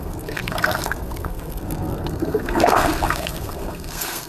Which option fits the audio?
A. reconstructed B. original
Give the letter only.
A